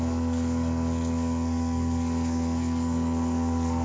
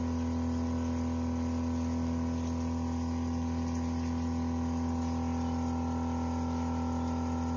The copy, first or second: first